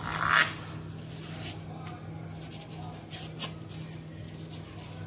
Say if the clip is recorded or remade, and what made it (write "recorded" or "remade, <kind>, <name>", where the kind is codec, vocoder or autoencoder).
recorded